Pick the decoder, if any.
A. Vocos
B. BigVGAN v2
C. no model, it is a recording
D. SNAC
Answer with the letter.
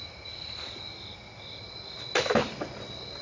C